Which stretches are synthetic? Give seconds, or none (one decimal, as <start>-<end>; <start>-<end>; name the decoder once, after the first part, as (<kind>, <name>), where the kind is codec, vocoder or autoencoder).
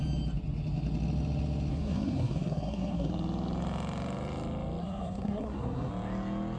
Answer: 1.7-3.1 (codec, SNAC); 4.8-5.9